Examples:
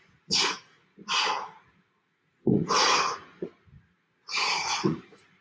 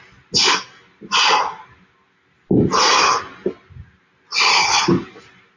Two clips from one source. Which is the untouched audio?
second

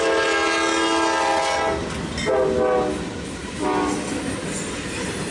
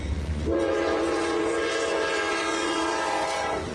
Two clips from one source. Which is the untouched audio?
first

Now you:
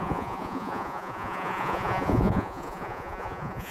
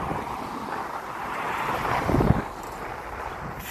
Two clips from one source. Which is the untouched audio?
second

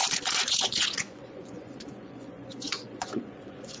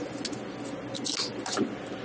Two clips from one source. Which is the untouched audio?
second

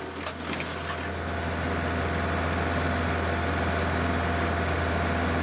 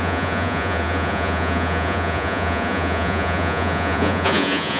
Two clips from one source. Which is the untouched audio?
first